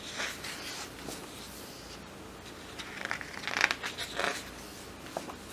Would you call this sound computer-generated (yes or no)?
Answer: no